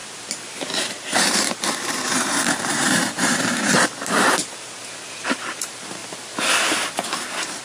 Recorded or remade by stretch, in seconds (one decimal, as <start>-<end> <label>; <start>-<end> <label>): 0.0-6.0 remade; 6.0-7.6 recorded